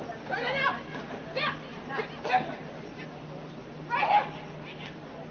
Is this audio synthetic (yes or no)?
no